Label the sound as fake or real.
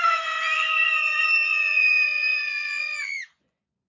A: fake